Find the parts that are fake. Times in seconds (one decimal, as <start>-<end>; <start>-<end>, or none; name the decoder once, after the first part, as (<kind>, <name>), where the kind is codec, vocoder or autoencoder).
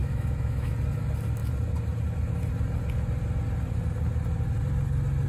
0.0-0.7 (autoencoder, DAC-VAE)